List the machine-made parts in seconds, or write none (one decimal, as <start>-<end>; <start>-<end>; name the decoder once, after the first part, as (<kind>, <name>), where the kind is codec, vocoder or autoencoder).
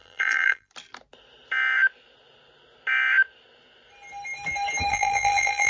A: 0.0-0.7 (vocoder, BigVGAN v2); 4.9-5.7